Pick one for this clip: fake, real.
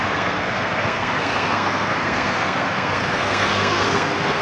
fake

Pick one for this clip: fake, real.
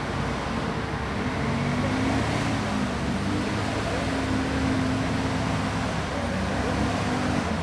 real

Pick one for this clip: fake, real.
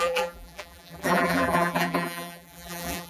fake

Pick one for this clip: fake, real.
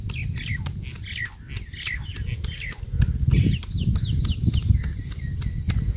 real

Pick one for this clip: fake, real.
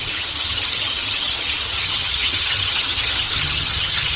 fake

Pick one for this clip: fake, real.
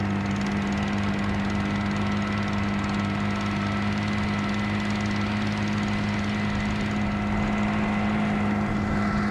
real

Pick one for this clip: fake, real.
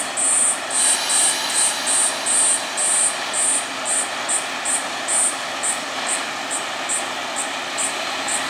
real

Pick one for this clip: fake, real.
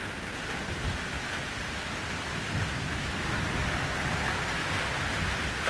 real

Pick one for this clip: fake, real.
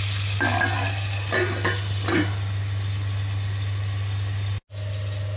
real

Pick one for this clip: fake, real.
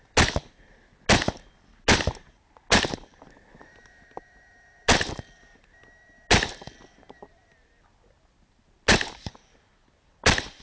real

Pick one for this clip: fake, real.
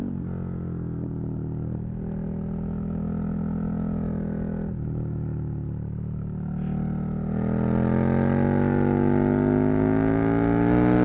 real